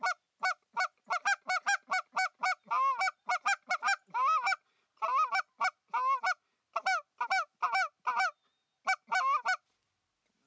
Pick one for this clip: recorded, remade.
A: recorded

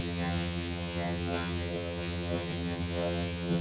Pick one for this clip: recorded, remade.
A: remade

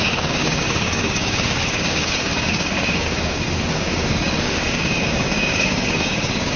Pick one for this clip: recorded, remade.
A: remade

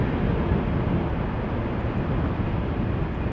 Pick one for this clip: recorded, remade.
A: recorded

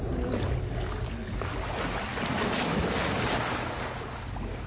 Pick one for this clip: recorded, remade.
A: recorded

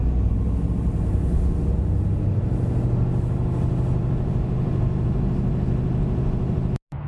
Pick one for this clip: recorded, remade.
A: recorded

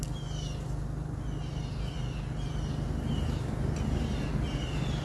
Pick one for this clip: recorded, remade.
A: recorded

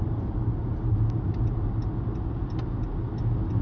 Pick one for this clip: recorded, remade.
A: recorded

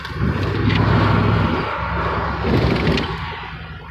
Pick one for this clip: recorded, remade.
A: recorded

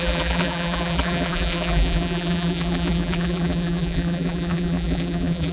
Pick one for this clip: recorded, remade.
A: remade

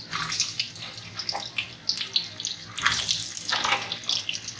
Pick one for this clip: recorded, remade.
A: recorded